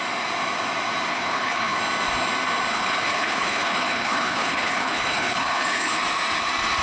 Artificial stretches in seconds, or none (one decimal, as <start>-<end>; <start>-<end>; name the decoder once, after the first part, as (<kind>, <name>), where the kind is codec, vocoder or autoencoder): 1.1-1.8 (codec, HILCodec); 2.7-6.0